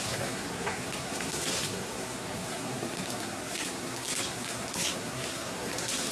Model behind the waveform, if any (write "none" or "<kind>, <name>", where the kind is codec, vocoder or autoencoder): codec, SNAC